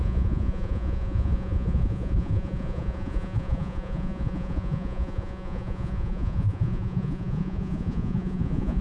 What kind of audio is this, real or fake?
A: fake